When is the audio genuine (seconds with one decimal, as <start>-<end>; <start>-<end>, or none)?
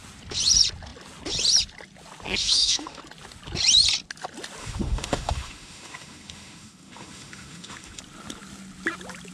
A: 0.0-2.4; 3.0-4.6; 8.0-9.3